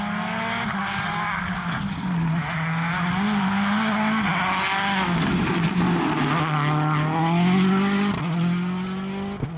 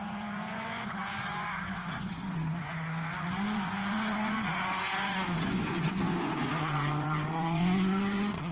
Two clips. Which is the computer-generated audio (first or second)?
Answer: second